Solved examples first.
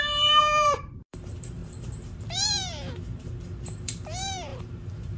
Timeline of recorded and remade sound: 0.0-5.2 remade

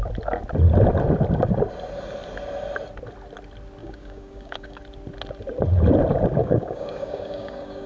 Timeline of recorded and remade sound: 0.0-3.8 recorded; 3.8-4.8 remade; 4.8-6.4 recorded; 6.4-7.9 remade

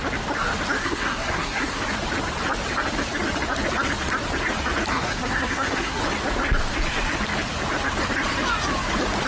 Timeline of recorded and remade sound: 0.0-0.8 recorded; 0.8-1.8 remade; 1.8-4.9 recorded; 4.9-6.0 remade; 6.0-9.3 recorded

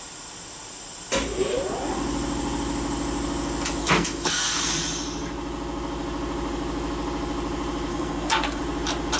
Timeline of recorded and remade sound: 0.0-3.8 recorded; 3.8-4.7 remade; 4.7-7.9 recorded; 7.9-8.6 remade; 8.6-9.2 recorded

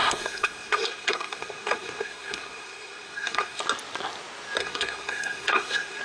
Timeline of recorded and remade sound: 0.0-3.6 remade; 3.6-4.6 recorded; 4.6-6.0 remade

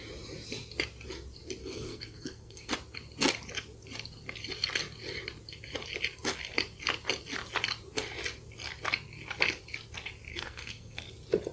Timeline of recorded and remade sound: 0.0-1.6 recorded; 1.6-2.7 remade; 2.7-10.3 recorded; 10.3-11.0 remade; 11.0-11.5 recorded